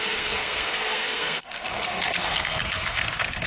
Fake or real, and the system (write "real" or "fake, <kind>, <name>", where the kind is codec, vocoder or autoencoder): fake, codec, SNAC